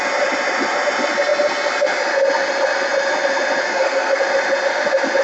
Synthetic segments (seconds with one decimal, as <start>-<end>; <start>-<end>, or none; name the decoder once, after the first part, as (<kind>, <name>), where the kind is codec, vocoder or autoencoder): 3.7-4.2 (codec, SNAC)